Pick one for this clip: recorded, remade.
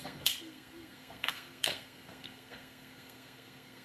remade